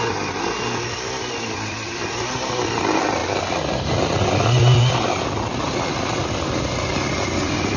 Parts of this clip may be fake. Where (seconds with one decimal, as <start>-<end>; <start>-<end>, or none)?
none